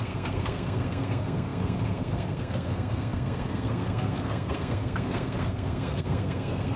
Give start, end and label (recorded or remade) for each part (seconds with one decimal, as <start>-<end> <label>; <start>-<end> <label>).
0.0-6.8 remade